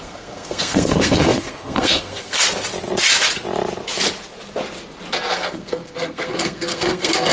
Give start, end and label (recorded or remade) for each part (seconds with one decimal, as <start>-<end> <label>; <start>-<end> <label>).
0.0-2.4 remade; 2.4-5.3 recorded; 5.3-7.3 remade